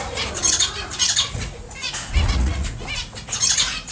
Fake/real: fake